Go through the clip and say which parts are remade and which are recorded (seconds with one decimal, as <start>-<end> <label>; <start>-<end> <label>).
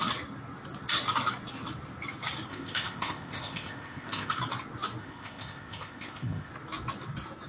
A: 0.0-2.5 recorded; 2.5-4.4 remade; 4.4-5.0 recorded; 5.0-6.5 remade; 6.5-7.5 recorded